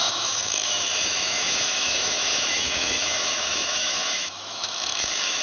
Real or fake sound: fake